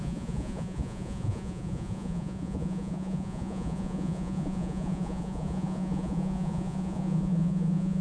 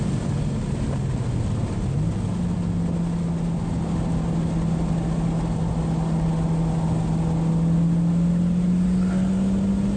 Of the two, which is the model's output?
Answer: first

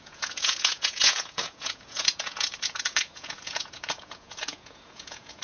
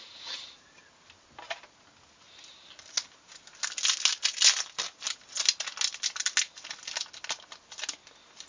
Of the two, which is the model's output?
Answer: first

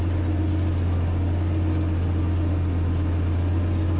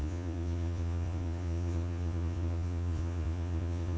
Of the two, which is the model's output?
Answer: second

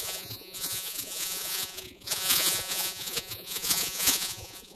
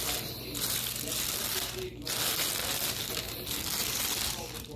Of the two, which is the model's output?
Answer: first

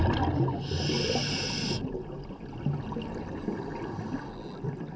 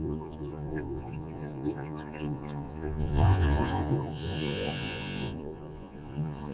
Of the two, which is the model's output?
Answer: second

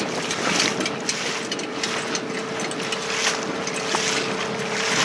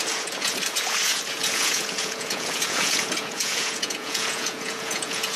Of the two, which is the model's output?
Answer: second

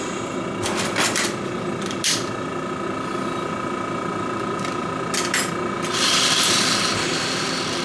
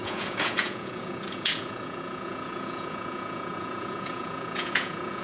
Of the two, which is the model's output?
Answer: second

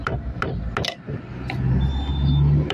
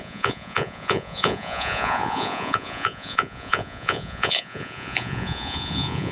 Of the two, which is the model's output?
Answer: second